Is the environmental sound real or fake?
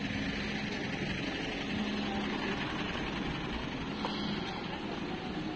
real